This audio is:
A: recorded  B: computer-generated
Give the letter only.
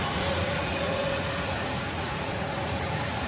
B